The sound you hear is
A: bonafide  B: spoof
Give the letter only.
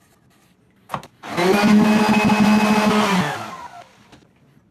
A